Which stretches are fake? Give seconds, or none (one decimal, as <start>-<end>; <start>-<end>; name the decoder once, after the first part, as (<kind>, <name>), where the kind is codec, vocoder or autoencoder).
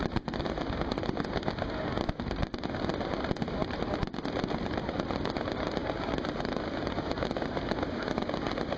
none